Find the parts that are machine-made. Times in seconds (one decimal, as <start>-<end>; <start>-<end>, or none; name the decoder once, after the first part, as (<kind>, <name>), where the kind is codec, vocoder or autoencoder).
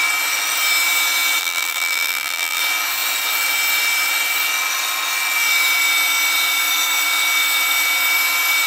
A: 1.4-2.6 (vocoder, BigVGAN v2)